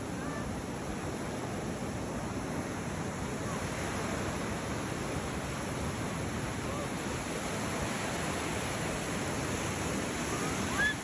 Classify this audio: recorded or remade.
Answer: recorded